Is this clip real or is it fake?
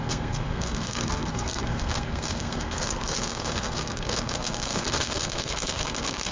fake